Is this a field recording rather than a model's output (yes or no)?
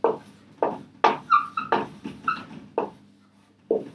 yes